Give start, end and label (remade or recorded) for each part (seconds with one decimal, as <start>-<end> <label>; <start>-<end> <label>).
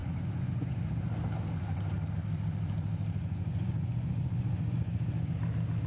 0.0-0.9 remade; 0.9-3.2 recorded; 3.2-5.4 remade; 5.4-5.9 recorded